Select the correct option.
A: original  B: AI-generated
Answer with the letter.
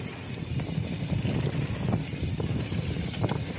A